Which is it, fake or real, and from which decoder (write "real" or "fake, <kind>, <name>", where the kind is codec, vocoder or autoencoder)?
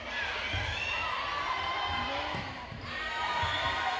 fake, vocoder, BigVGAN v2